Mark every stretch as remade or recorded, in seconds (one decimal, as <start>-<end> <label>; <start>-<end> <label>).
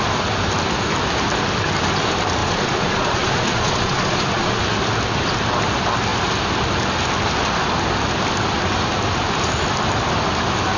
0.0-2.4 recorded; 2.4-4.6 remade; 4.6-10.8 recorded